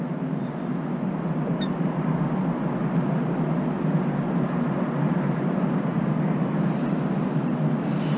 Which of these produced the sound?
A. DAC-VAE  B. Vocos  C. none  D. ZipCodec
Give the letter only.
C